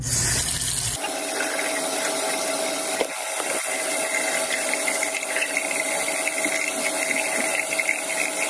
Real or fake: real